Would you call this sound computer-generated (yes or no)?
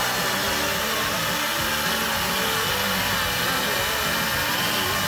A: no